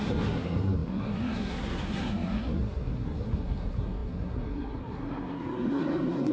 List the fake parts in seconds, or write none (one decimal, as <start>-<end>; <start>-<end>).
0.0-6.3